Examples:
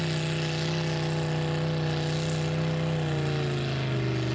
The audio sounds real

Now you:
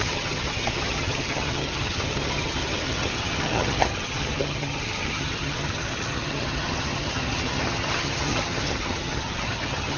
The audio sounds fake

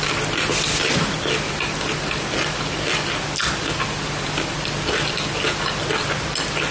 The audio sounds real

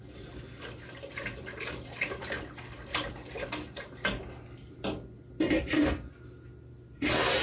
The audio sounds real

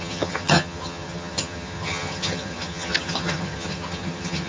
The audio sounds fake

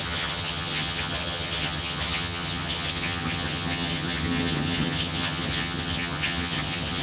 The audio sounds fake